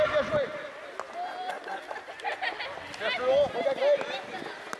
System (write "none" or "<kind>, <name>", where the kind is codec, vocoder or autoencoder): none